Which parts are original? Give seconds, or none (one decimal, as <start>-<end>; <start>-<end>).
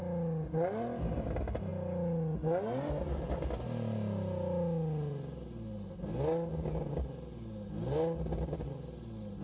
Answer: 0.0-9.4